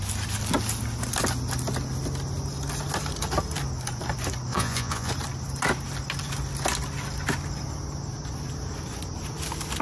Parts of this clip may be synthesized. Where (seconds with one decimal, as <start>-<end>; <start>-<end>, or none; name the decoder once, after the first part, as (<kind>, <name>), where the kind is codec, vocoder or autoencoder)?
4.5-5.1 (vocoder, Vocos)